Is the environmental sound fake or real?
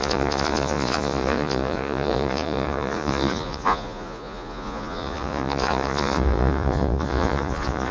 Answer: fake